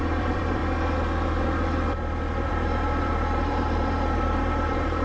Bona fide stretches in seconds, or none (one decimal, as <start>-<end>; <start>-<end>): 0.6-2.5